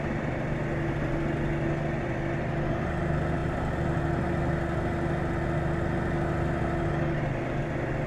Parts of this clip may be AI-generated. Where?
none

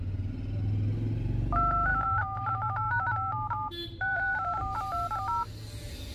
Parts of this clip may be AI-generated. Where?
1.9-4.6 (vocoder, BigVGAN v2)

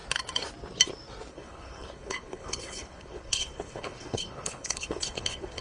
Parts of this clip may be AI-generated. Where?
1.3-5.6 (codec, HILCodec)